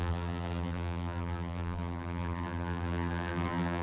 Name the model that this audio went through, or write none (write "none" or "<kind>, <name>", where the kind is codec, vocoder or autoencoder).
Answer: vocoder, BigVGAN v2